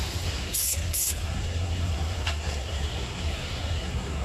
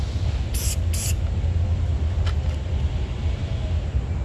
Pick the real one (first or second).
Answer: second